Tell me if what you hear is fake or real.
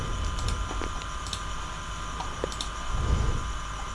real